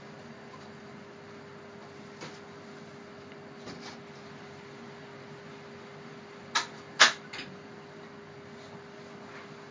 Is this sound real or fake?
real